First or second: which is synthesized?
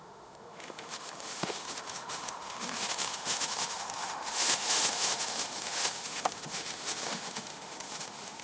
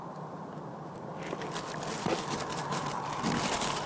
first